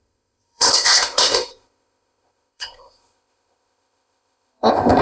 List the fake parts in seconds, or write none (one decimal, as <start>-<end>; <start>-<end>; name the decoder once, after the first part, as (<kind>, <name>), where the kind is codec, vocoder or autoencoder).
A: 0.0-5.0 (codec, ZipCodec)

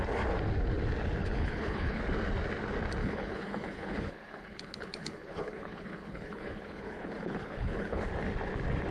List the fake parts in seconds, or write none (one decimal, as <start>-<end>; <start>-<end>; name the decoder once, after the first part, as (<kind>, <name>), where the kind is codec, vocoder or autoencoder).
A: 1.2-2.0 (codec, HILCodec); 3.0-8.0

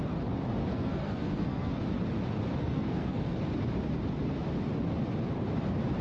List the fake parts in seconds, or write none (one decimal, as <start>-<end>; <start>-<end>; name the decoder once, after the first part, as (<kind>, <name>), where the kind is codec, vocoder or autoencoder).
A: 0.7-1.8 (codec, SNAC); 2.6-3.4

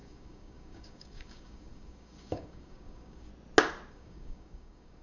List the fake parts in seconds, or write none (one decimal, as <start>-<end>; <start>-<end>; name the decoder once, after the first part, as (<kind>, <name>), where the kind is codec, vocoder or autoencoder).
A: 0.0-3.3 (codec, DAC); 3.9-5.0

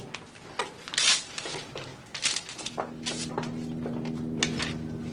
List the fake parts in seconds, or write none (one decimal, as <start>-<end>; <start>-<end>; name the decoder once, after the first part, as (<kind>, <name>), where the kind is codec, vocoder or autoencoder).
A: none

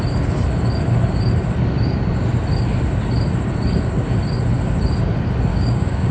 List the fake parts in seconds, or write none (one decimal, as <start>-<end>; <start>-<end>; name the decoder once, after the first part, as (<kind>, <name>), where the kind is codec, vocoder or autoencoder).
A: 5.5-6.1 (codec, DAC)